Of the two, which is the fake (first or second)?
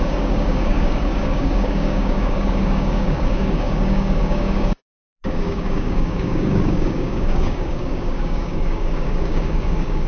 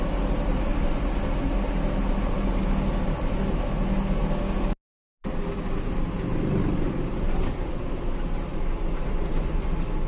first